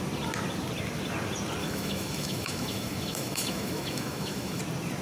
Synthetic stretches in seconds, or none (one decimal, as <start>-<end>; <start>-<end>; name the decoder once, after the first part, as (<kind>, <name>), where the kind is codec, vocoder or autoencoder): 1.6-4.6 (autoencoder, DAC-VAE)

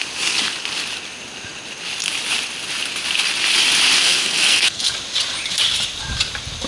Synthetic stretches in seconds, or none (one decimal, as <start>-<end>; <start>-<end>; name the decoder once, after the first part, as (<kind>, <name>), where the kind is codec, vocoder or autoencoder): 4.0-4.9 (codec, SNAC)

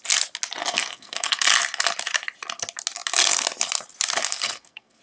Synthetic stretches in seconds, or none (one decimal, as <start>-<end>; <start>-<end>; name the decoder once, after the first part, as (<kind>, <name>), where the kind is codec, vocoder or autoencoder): 0.6-1.5 (codec, SNAC); 4.2-5.0

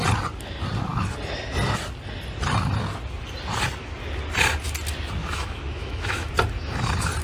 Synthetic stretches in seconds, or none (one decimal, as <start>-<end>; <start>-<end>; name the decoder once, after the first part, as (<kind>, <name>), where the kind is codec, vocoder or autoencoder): 5.2-6.3 (autoencoder, DAC-VAE)